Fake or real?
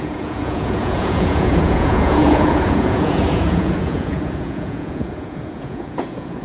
fake